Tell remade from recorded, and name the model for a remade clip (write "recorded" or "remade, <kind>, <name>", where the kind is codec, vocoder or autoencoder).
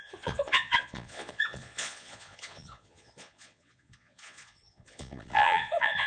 remade, vocoder, Vocos